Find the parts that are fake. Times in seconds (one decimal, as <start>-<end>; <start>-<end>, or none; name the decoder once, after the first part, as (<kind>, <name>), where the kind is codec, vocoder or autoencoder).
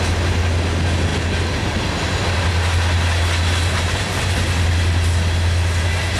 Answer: none